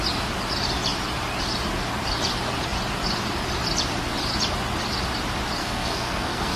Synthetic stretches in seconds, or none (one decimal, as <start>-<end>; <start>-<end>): 5.6-6.6